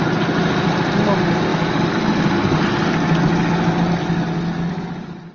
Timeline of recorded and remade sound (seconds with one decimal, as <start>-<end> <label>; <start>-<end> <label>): 0.0-5.3 recorded